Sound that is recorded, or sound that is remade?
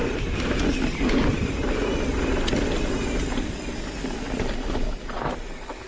recorded